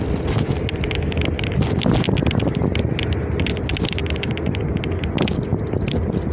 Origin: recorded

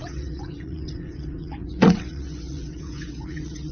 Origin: remade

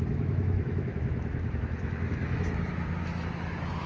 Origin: remade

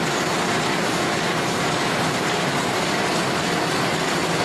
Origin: recorded